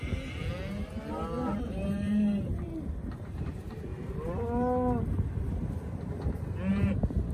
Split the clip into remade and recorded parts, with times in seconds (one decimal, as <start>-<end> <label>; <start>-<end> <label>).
0.0-0.4 remade; 0.4-1.5 recorded; 1.5-3.9 remade; 3.9-6.7 recorded; 6.7-7.3 remade